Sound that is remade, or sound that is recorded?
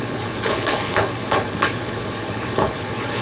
remade